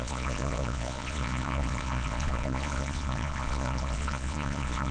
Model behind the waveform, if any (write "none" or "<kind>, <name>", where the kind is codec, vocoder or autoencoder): vocoder, Vocos